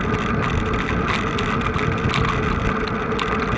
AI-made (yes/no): no